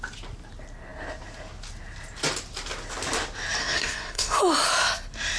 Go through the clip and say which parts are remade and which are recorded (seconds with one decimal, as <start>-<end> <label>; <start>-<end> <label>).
0.0-3.6 recorded; 3.6-4.4 remade; 4.4-5.4 recorded